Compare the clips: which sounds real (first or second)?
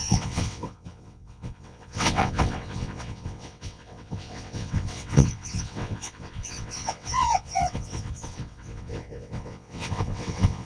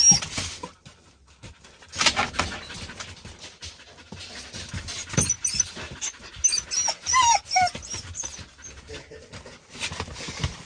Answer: second